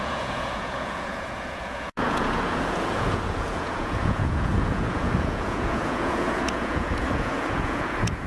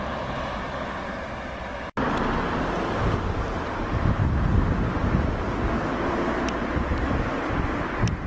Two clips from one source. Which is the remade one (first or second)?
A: first